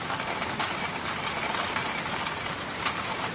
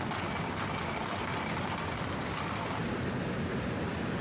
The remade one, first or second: first